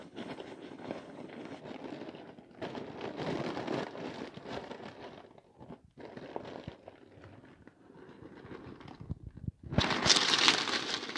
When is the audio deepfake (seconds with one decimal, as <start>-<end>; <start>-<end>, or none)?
0.0-1.6